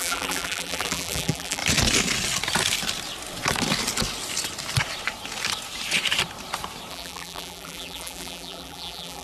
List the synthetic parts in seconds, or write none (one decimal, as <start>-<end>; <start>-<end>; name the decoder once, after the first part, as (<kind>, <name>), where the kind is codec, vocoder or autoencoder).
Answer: 0.0-1.6 (vocoder, BigVGAN v2); 6.9-9.2